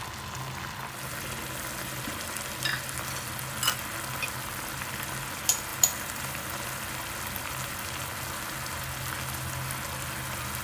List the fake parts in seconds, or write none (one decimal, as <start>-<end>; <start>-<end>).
5.7-6.9